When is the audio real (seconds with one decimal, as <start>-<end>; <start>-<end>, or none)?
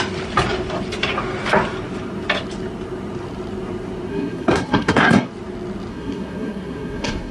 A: 0.0-4.1; 5.3-5.9